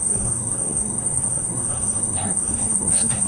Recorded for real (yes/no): no